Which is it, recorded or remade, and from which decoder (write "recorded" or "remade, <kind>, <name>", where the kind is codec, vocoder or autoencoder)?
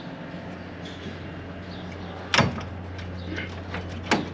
recorded